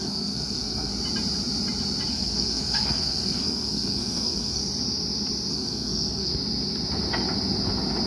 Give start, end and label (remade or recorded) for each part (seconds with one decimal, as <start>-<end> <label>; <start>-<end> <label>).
0.0-0.9 remade; 0.9-2.1 recorded; 2.1-4.6 remade; 4.6-5.5 recorded; 5.5-6.3 remade; 6.3-8.1 recorded